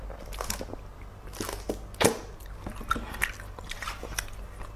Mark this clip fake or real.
real